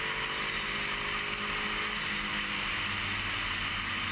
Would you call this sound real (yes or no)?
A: yes